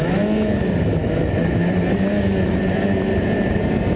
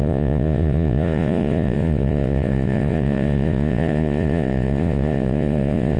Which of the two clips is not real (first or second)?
second